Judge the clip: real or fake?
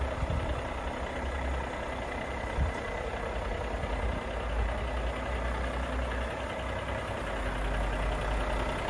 real